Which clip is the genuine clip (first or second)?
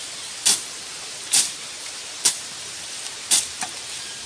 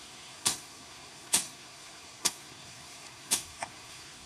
first